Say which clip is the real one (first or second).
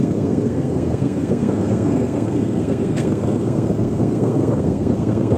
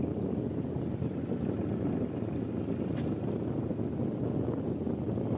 second